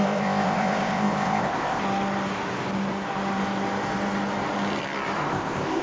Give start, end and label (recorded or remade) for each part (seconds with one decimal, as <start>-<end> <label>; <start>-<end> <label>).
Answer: 0.0-1.8 remade; 1.8-5.3 recorded; 5.3-5.8 remade